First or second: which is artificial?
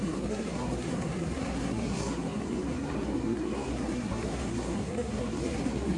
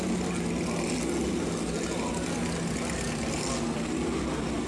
first